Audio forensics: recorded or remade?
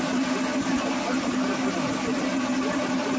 recorded